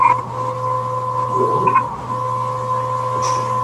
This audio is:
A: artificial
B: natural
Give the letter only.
B